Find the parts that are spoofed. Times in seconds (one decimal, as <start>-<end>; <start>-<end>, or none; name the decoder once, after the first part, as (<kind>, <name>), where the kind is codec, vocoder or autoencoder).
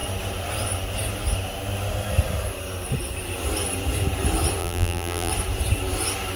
4.6-5.3 (vocoder, BigVGAN v2)